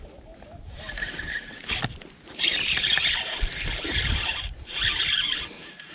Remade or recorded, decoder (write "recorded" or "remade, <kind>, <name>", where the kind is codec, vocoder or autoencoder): remade, vocoder, BigVGAN v2